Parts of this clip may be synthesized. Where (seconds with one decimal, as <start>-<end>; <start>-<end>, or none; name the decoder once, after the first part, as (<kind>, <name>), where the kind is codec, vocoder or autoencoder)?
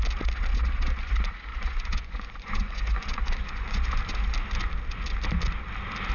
0.5-1.1 (vocoder, Vocos); 1.5-4.0